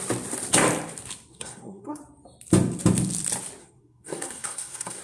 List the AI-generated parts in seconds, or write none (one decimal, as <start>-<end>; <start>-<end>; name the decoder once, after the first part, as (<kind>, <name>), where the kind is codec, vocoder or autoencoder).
1.3-2.0 (codec, SNAC); 3.6-5.0